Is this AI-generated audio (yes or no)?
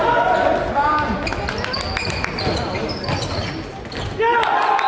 no